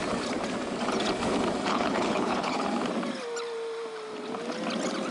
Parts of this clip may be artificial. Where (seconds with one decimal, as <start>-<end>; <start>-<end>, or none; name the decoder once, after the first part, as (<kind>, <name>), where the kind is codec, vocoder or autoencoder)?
1.7-2.6 (codec, HILCodec)